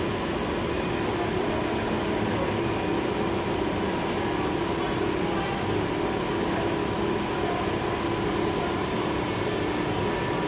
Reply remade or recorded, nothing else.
recorded